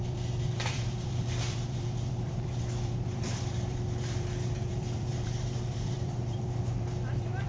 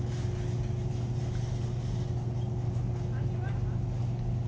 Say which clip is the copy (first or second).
first